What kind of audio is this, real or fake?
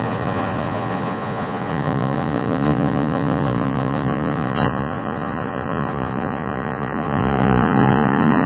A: fake